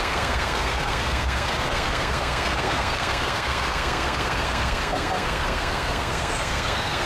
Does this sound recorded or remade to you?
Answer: remade